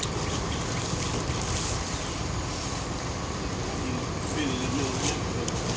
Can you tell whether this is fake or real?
real